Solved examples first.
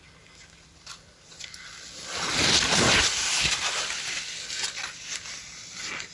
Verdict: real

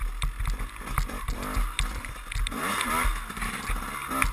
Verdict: real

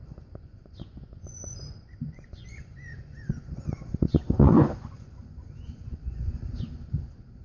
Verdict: fake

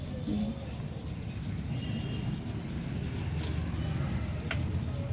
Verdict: real